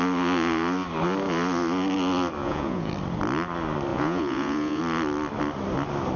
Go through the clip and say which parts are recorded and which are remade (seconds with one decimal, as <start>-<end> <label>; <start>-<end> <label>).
0.0-2.4 recorded; 2.4-2.9 remade; 2.9-3.9 recorded; 3.9-4.8 remade; 4.8-6.2 recorded